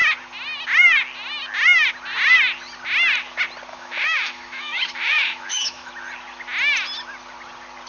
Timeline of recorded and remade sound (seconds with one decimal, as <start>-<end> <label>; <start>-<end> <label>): 0.0-3.7 recorded; 3.7-5.9 remade; 5.9-7.9 recorded